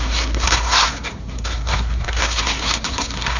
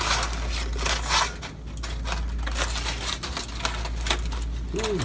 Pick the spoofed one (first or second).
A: first